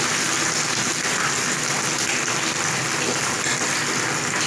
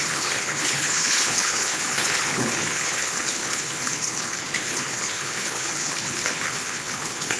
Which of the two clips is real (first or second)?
first